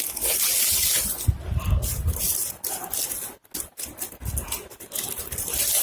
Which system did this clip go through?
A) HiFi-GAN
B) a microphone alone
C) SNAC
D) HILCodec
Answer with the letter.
B